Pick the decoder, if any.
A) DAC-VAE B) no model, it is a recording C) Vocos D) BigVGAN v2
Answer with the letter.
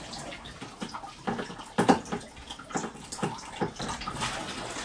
B